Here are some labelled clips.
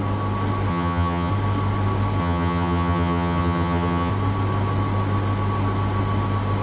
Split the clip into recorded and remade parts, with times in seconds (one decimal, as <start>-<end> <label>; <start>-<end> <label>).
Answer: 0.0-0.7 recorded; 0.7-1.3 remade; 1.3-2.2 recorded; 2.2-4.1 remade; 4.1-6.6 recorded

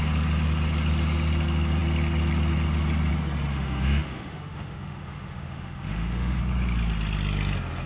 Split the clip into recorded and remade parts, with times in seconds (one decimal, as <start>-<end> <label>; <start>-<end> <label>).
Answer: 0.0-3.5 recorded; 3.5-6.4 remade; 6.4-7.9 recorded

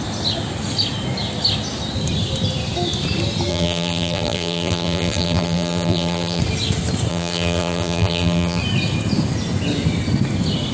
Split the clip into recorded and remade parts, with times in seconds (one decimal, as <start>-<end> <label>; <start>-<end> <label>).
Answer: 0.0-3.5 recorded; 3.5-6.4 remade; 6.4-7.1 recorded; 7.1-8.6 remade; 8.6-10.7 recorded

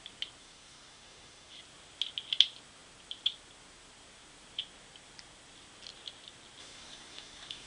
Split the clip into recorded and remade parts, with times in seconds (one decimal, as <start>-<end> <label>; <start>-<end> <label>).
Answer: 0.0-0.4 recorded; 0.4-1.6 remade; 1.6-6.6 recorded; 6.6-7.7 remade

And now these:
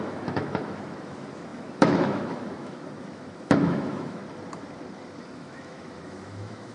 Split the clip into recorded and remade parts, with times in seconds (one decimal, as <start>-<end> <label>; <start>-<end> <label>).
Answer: 0.0-4.2 remade; 4.2-5.2 recorded; 5.2-6.7 remade